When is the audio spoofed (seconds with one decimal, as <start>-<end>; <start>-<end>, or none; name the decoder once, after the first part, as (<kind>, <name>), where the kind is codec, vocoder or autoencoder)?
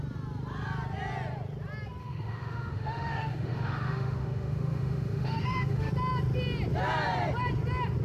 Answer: 2.0-5.9 (autoencoder, DAC-VAE)